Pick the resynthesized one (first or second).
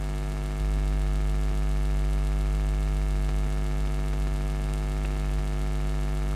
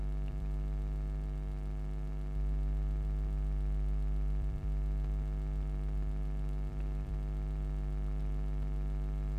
second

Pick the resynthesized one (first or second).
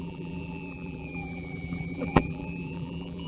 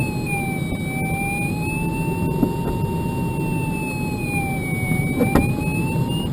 first